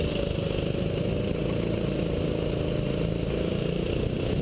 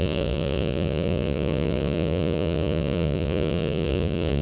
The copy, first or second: second